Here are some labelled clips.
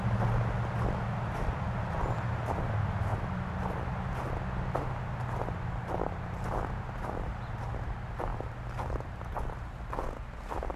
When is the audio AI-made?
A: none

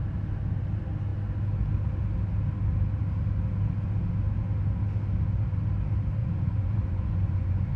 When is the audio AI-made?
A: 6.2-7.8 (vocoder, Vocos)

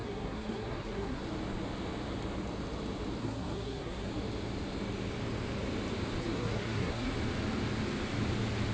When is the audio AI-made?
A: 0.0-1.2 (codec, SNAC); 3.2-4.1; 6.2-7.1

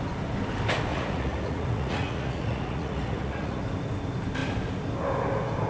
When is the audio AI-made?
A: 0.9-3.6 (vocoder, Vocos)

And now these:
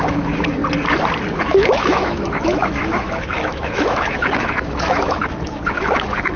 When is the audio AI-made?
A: 0.0-0.6 (autoencoder, DAC-VAE); 1.3-6.4